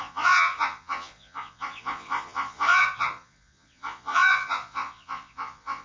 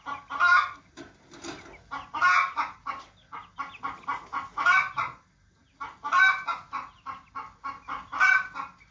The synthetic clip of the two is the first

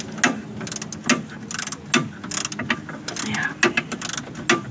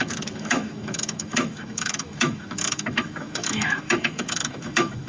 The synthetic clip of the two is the second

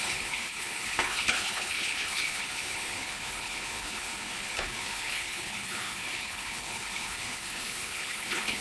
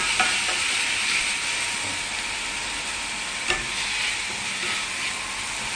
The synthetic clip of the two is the first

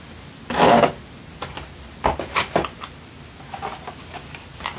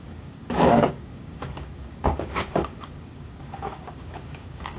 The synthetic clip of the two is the second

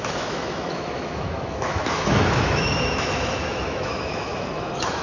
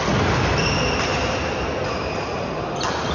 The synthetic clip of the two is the first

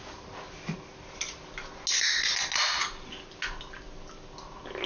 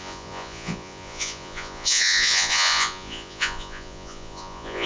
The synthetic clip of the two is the second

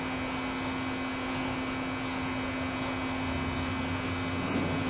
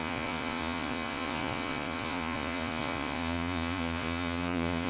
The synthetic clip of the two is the second